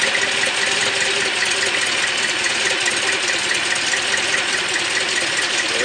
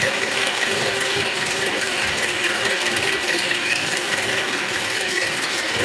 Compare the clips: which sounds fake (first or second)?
second